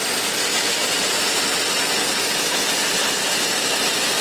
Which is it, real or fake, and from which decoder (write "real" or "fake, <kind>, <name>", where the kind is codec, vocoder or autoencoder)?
real